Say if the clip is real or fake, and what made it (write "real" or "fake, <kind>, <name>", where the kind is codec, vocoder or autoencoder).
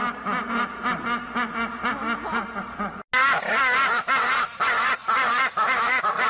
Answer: real